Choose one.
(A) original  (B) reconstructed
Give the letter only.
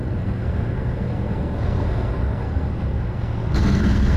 B